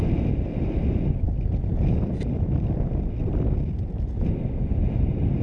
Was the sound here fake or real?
real